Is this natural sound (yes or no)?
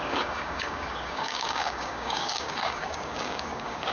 no